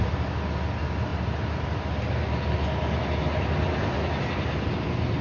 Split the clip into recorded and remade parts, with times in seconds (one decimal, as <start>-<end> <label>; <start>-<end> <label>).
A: 0.0-5.2 recorded